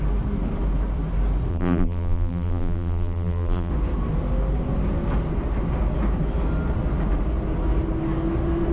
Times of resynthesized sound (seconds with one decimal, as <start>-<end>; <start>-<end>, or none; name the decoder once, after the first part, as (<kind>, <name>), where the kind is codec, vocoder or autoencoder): 1.5-3.7 (vocoder, BigVGAN v2)

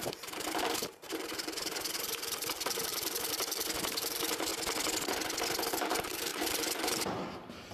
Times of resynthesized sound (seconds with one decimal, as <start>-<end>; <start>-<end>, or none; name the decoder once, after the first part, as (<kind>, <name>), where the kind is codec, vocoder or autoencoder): 0.0-4.5 (vocoder, BigVGAN v2); 5.7-7.7